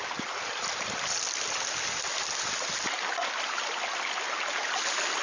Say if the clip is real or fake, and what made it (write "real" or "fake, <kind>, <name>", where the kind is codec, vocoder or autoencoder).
real